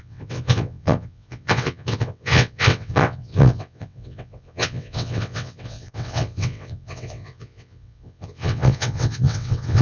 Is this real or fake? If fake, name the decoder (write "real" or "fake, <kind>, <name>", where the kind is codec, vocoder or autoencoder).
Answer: fake, vocoder, WaveNeXt